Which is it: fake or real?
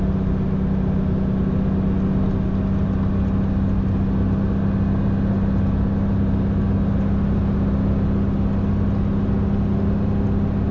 real